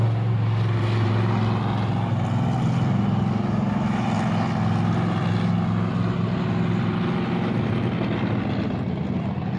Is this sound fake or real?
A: real